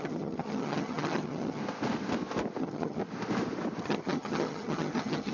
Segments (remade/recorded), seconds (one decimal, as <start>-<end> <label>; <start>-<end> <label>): 0.0-1.6 remade; 1.6-2.6 recorded; 2.6-3.0 remade; 3.0-3.8 recorded; 3.8-5.3 remade